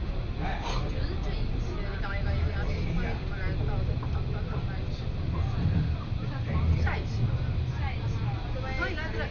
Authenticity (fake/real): real